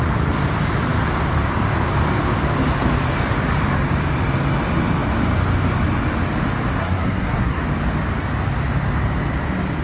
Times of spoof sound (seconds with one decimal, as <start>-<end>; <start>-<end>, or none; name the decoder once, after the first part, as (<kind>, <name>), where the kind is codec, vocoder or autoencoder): 6.8-7.6 (codec, SNAC)